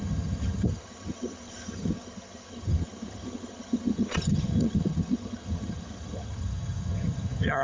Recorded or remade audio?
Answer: remade